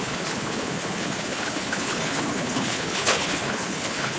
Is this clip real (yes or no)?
no